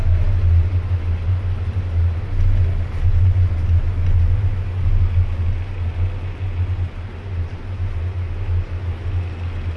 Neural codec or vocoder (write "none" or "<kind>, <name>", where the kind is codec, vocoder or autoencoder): none